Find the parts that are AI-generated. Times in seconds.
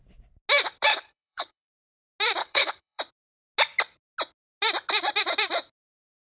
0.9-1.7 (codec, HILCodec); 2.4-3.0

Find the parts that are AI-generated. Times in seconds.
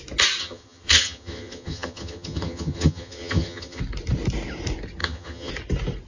0.4-3.8 (vocoder, HiFi-GAN); 5.0-5.5